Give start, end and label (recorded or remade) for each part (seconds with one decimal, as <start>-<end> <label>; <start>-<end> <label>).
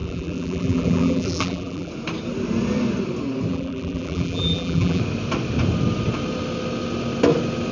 0.0-1.9 remade; 1.9-3.5 recorded; 3.5-5.0 remade; 5.0-7.7 recorded